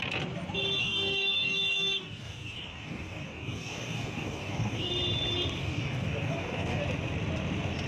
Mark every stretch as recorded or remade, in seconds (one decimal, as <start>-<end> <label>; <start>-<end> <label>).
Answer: 0.0-0.8 recorded; 0.8-4.9 remade; 4.9-5.6 recorded; 5.6-6.8 remade; 6.8-7.9 recorded